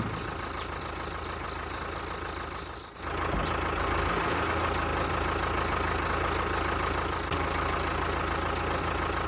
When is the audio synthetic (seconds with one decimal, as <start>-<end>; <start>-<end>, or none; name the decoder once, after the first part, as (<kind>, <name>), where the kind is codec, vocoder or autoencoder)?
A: none